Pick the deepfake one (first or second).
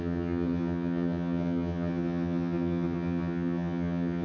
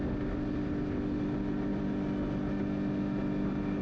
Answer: first